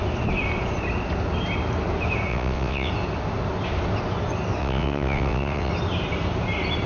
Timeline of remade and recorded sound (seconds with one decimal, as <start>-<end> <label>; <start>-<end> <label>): 0.0-2.3 recorded; 2.3-2.9 remade; 2.9-4.6 recorded; 4.6-5.7 remade; 5.7-6.9 recorded